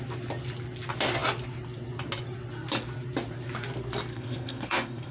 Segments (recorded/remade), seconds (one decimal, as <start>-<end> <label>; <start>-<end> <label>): 0.0-4.1 recorded; 4.1-5.1 remade